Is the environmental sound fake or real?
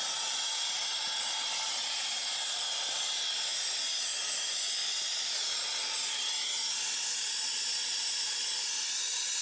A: real